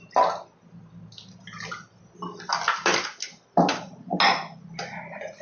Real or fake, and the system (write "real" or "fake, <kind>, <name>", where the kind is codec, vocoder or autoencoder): real